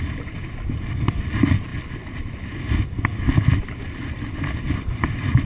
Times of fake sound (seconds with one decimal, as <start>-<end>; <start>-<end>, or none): none